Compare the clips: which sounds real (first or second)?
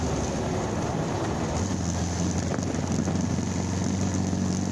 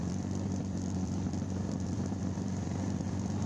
first